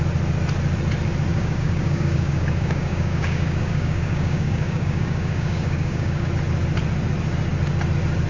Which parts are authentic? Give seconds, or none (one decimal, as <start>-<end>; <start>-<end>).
0.0-1.3; 6.3-8.3